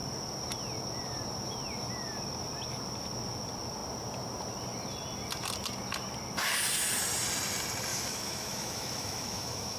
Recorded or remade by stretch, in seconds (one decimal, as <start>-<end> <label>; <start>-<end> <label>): 0.0-7.9 recorded; 7.9-9.8 remade